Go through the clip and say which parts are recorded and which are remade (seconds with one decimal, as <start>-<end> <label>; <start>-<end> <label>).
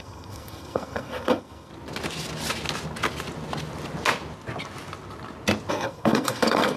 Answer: 0.0-1.7 remade; 1.7-5.7 recorded; 5.7-6.8 remade